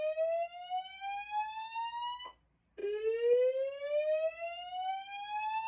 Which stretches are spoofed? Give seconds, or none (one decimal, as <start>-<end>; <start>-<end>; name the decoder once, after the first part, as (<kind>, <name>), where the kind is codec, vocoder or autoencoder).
none